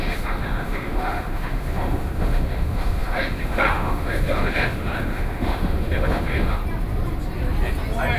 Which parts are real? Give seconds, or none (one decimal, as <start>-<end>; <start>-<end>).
6.6-8.2